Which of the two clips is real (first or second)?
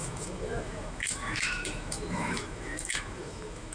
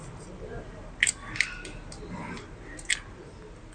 second